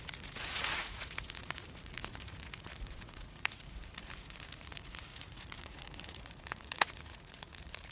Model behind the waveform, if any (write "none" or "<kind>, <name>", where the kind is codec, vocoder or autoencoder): vocoder, Vocos